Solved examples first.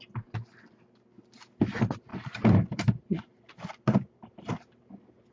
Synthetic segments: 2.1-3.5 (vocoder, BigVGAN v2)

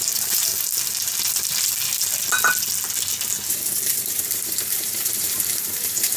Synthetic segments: 0.0-0.5 (vocoder, BigVGAN v2); 4.1-6.2

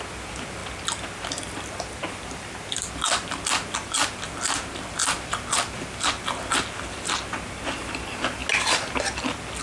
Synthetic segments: 0.6-2.9 (vocoder, BigVGAN v2)